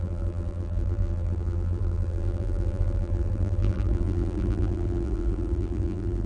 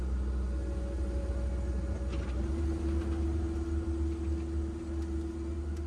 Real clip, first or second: second